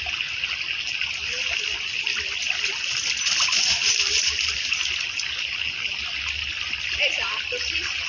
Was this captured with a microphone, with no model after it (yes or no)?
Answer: yes